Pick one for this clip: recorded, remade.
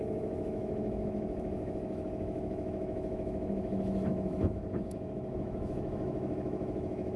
remade